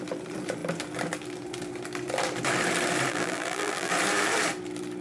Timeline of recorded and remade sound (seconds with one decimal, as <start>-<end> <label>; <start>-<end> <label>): 0.0-3.1 recorded; 3.1-3.9 remade; 3.9-5.0 recorded